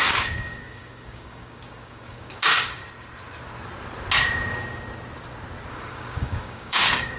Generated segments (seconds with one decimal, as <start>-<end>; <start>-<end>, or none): 0.0-2.8; 5.7-7.2